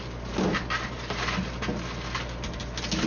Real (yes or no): yes